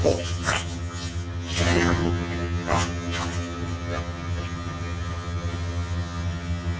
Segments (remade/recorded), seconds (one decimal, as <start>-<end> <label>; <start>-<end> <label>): 0.0-6.8 remade